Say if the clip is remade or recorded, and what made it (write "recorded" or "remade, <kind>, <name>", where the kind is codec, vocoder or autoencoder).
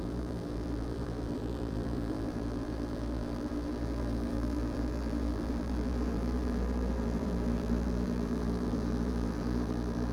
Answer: remade, vocoder, BigVGAN v2